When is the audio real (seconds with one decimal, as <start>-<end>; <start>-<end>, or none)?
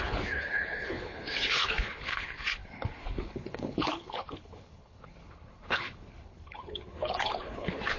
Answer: none